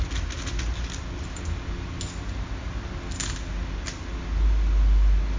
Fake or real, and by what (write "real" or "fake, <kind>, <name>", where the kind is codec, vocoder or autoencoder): real